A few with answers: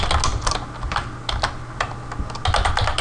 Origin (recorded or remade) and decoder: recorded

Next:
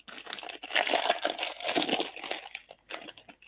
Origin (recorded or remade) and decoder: recorded